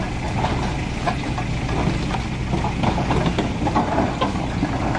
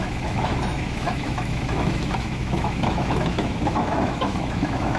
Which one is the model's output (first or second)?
second